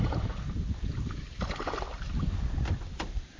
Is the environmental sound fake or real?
real